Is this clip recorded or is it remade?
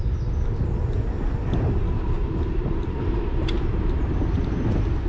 recorded